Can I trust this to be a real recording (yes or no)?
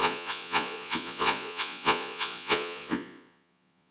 no